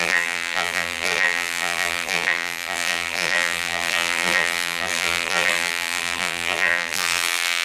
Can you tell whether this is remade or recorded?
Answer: remade